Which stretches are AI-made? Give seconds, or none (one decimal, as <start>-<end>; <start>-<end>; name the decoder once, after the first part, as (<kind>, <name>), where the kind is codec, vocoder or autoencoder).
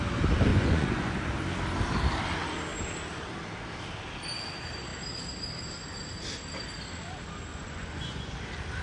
0.5-1.2 (vocoder, Vocos); 7.5-8.3